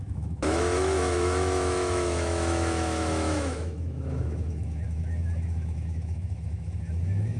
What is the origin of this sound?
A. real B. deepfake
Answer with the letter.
B